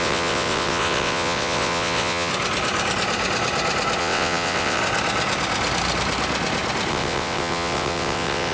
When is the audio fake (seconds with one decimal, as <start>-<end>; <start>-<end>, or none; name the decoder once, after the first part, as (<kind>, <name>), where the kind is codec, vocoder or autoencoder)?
0.0-2.3 (vocoder, WaveNeXt); 4.0-4.8; 6.9-8.5